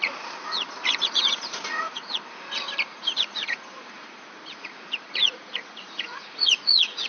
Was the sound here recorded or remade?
remade